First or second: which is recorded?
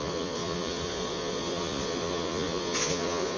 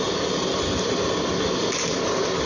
second